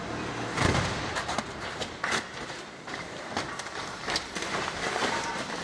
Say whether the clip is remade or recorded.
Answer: remade